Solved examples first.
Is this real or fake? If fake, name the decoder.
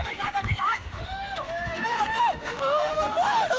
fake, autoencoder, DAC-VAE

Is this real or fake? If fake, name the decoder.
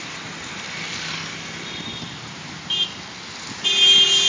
real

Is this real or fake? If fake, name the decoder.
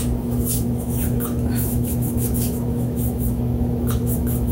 fake, autoencoder, DAC-VAE